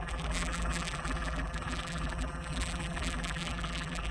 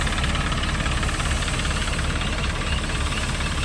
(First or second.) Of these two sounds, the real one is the second